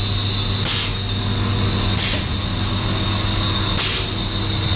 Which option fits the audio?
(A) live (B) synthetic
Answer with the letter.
A